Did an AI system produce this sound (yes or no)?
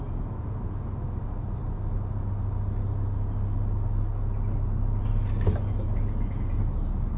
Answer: no